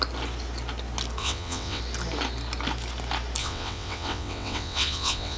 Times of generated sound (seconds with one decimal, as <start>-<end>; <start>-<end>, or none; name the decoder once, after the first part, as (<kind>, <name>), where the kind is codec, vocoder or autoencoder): 1.2-1.8 (vocoder, WaveNeXt); 3.4-5.4